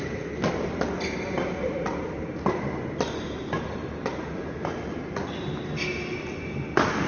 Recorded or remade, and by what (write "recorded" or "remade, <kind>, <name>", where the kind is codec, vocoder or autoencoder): recorded